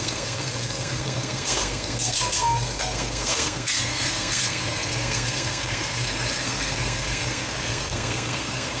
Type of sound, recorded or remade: remade